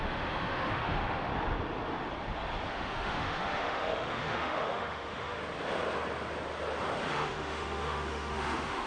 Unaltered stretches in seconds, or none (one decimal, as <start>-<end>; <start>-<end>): 1.3-2.7; 5.4-7.1